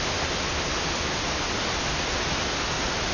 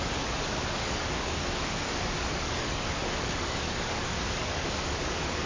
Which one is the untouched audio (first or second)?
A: first